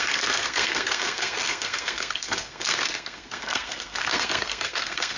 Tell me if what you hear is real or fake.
fake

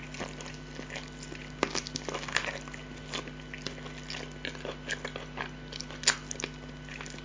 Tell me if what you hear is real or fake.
real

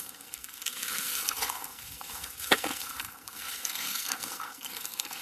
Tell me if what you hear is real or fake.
fake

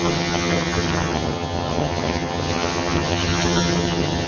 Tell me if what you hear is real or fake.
fake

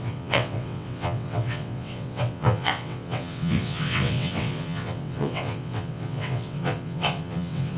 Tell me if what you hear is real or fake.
fake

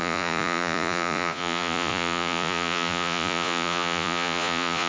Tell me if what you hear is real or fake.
fake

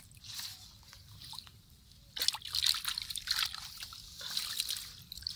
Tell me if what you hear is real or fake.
real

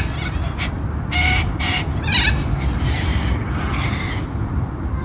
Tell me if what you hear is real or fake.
fake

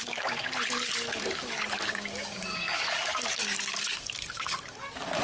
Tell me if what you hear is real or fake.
fake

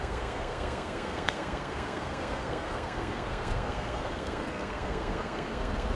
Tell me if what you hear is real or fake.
fake